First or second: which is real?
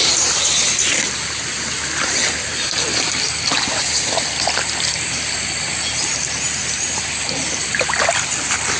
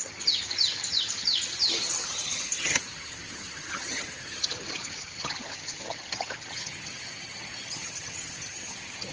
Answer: first